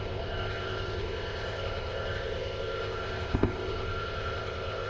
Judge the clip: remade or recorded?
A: remade